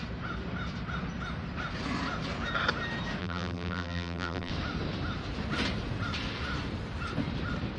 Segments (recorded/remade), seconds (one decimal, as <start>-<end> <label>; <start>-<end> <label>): 0.0-3.2 recorded; 3.2-4.5 remade; 4.5-7.8 recorded